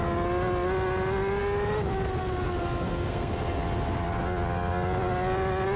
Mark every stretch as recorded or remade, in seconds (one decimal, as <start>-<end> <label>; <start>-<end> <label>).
0.0-2.6 recorded; 2.6-3.3 remade; 3.3-5.8 recorded